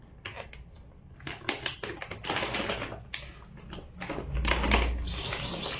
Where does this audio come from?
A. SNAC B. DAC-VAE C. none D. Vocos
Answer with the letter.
C